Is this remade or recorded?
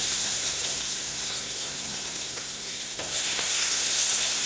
remade